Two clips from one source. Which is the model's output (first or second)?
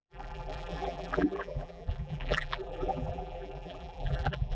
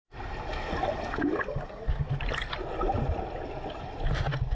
first